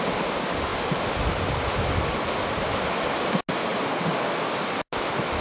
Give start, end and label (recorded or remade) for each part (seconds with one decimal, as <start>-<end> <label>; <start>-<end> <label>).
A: 0.0-5.4 recorded